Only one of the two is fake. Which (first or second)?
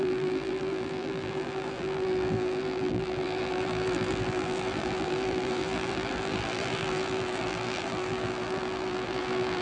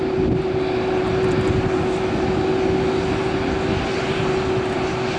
first